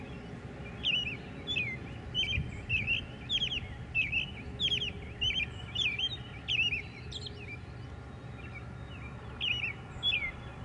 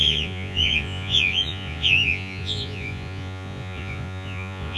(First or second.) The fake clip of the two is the second